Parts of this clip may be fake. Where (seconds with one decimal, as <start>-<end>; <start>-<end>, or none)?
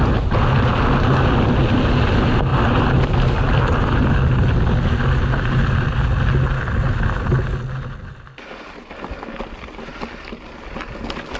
none